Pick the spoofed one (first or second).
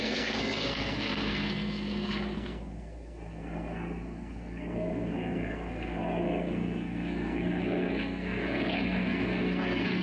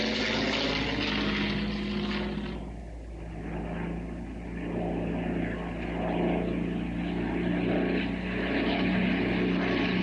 first